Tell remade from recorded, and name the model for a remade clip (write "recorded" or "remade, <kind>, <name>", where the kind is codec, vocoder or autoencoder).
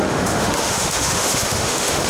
remade, autoencoder, DAC-VAE